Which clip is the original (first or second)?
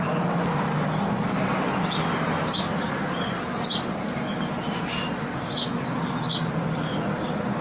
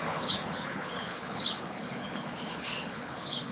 first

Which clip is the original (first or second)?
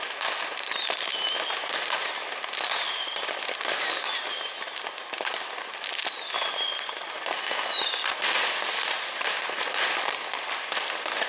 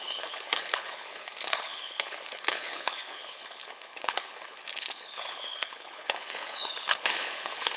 first